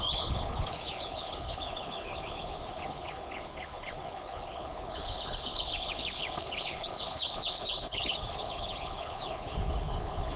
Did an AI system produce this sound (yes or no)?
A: yes